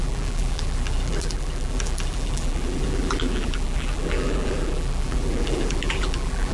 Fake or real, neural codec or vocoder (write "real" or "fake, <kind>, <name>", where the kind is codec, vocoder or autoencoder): fake, vocoder, BigVGAN v2